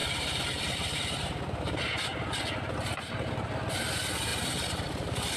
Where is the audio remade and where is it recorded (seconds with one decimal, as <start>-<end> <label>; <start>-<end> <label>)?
0.0-2.1 remade; 2.1-3.9 recorded; 3.9-5.4 remade

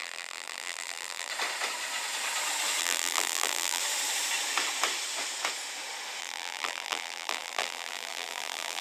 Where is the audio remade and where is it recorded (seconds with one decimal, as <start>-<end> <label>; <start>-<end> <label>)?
0.0-1.3 remade; 1.3-2.8 recorded; 2.8-3.8 remade; 3.8-6.2 recorded; 6.2-8.8 remade